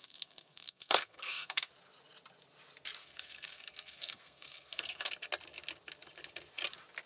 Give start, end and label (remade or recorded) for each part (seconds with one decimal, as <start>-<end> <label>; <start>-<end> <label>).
0.0-1.7 remade; 1.7-3.0 recorded; 3.0-5.1 remade; 5.1-7.1 recorded